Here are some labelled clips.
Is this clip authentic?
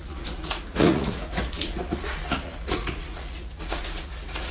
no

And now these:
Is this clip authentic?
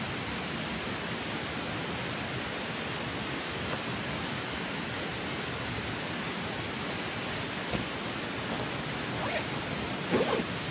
yes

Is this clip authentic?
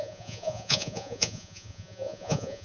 no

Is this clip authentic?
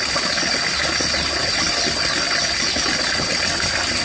yes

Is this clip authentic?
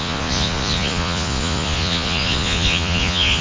no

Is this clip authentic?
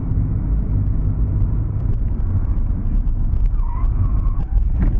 yes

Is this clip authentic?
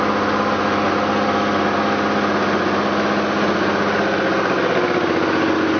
yes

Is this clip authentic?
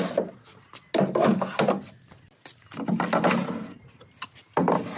yes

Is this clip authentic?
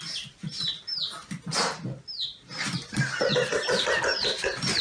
yes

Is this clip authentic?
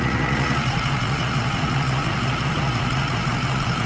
no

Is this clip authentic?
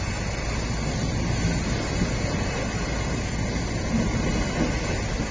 yes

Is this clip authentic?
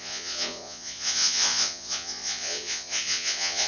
no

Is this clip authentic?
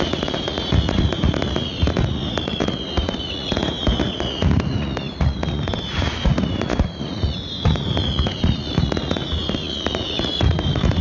no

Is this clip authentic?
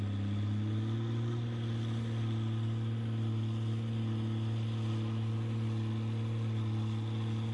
yes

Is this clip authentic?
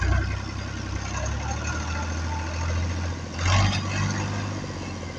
yes